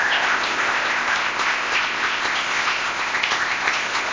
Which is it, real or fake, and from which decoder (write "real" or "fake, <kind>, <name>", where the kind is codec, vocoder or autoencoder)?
fake, codec, ZipCodec